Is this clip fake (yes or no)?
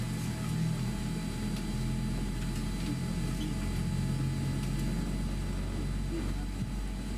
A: no